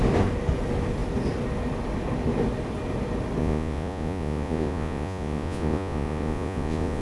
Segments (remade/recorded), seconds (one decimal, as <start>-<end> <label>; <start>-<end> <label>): 0.0-3.4 recorded; 3.4-7.0 remade